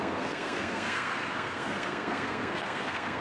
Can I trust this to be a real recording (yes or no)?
no